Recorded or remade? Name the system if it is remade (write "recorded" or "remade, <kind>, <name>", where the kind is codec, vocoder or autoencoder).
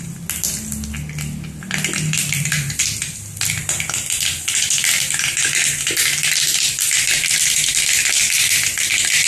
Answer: recorded